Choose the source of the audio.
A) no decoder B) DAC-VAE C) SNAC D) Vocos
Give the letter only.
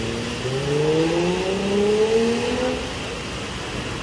A